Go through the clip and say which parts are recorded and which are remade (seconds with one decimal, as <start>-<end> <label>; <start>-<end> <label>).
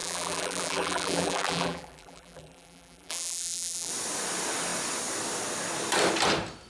0.0-3.9 remade; 3.9-6.7 recorded